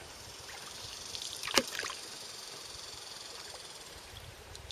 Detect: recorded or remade remade